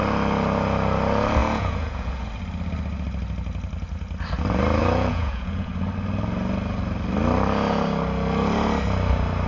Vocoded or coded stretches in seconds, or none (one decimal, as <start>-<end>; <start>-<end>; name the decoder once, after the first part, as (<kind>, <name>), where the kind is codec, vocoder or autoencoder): 1.4-2.3 (vocoder, Vocos); 4.8-5.7